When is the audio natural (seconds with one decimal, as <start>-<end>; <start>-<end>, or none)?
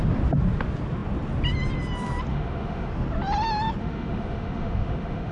0.0-2.3; 2.9-3.8